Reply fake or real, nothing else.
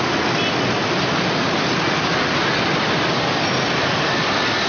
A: real